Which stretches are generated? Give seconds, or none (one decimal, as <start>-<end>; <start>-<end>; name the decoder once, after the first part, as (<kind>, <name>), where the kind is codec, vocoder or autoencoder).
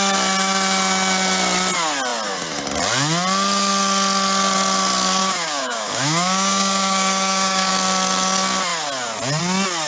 5.2-7.7 (codec, DAC)